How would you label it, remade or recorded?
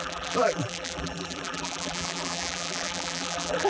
remade